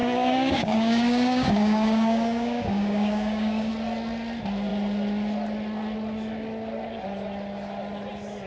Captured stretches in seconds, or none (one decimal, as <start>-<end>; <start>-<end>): 3.7-8.5